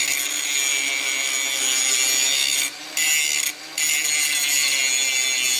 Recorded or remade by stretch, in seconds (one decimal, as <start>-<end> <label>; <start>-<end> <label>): 0.0-5.6 recorded